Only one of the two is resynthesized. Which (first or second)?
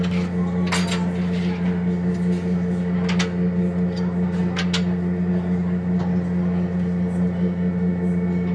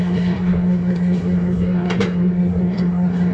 second